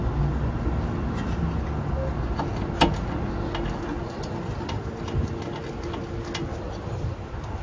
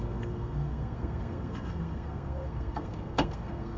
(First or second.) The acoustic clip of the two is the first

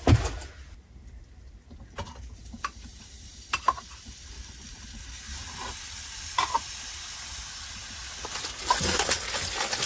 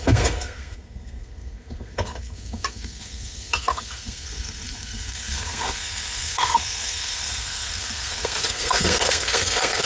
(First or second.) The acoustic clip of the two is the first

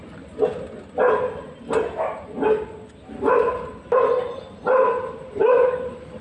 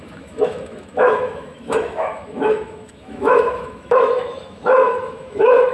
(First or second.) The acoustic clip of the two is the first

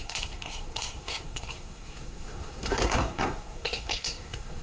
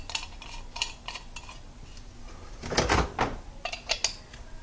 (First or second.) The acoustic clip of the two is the second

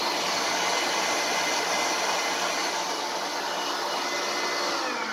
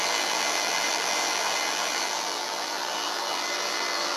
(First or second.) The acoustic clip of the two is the first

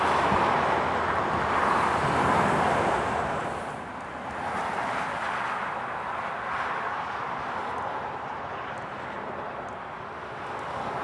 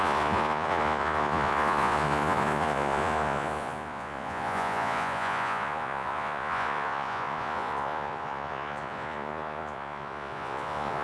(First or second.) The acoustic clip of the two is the first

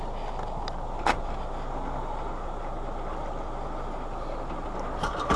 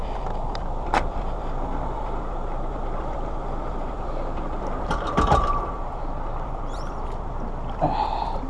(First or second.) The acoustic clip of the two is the first